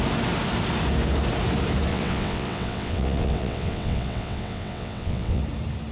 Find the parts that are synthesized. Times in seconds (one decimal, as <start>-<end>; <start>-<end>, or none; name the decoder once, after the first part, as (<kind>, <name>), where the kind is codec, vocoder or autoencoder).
1.9-5.4 (vocoder, WaveNeXt)